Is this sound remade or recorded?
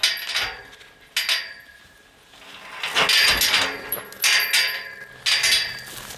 recorded